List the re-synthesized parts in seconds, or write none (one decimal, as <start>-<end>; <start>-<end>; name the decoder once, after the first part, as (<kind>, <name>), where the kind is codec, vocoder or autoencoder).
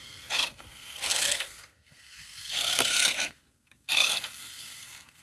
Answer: 0.0-5.2 (codec, SNAC)